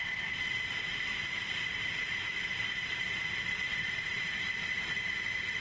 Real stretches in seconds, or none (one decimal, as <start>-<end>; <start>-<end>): 0.0-1.1; 4.5-5.6